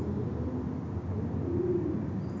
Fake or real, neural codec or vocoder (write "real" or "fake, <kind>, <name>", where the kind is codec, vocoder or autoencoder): real